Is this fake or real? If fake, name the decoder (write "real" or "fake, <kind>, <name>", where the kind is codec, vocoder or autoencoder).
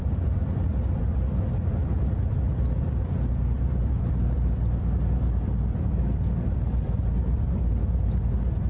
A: fake, vocoder, BigVGAN v2